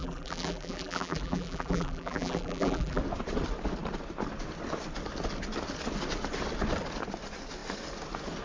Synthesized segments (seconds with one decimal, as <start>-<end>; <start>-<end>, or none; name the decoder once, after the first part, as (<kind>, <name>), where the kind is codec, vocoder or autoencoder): 0.0-3.0 (vocoder, BigVGAN v2)